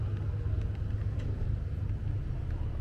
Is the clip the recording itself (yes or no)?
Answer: yes